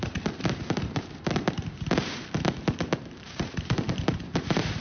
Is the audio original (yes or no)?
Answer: no